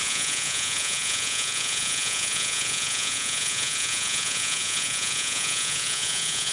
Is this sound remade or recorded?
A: remade